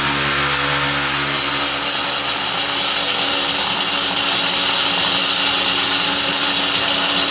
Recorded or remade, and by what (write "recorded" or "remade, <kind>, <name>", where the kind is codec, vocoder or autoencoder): recorded